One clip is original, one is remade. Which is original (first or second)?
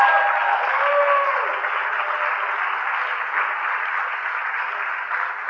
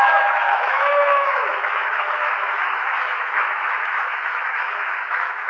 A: first